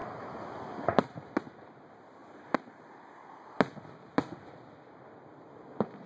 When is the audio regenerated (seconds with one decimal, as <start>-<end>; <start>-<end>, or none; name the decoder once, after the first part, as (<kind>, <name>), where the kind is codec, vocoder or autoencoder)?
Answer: none